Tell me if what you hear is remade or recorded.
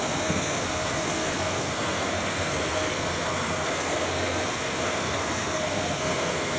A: remade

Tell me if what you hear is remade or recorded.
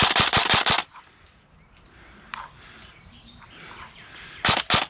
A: recorded